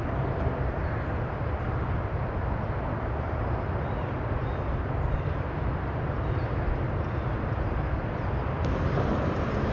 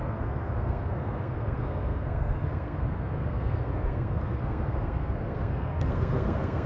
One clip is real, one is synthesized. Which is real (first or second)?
first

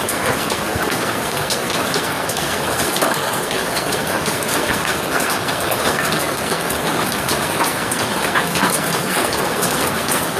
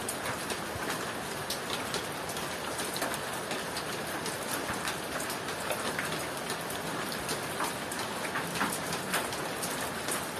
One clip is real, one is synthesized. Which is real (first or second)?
second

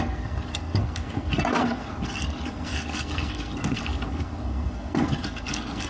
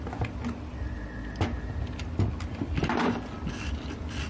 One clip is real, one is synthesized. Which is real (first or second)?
second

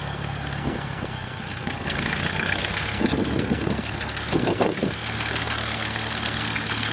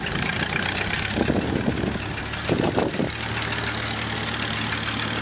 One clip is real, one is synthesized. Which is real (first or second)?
second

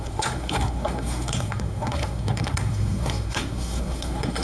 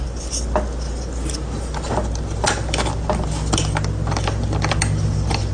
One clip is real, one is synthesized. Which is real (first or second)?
second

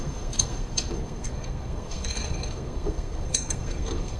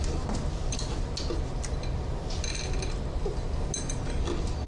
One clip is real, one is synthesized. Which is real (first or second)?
second